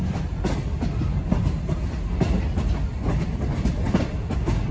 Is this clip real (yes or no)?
yes